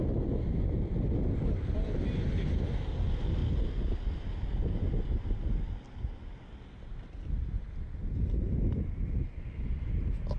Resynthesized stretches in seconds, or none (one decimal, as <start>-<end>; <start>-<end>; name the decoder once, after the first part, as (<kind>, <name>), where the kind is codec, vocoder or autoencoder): none